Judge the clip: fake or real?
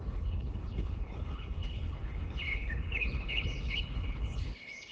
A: fake